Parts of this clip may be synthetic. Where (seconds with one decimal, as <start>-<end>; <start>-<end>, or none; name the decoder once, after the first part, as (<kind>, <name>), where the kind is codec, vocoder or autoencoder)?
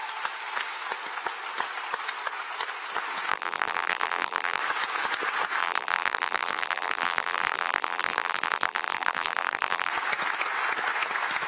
3.3-4.6 (vocoder, BigVGAN v2); 5.6-9.9